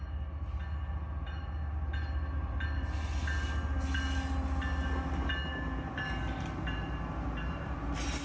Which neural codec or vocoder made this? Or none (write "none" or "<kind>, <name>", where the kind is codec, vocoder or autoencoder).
none